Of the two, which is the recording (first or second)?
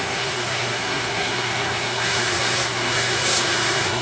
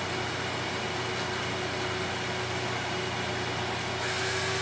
second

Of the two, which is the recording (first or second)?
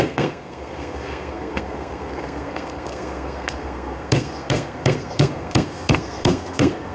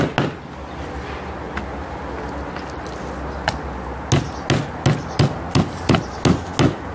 second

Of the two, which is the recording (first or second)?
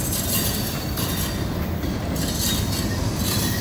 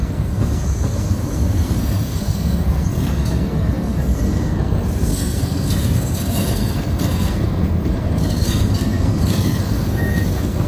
first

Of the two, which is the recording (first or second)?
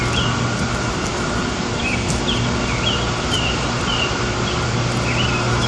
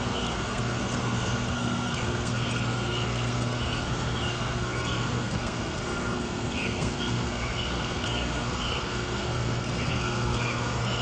first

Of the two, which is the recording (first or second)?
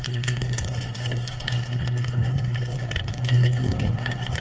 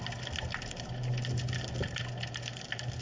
second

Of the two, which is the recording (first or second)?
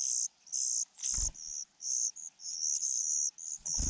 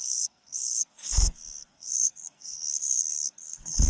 first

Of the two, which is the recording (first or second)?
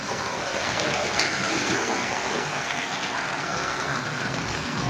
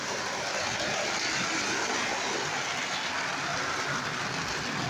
second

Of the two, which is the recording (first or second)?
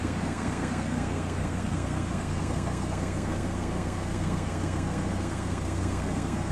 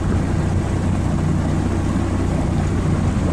second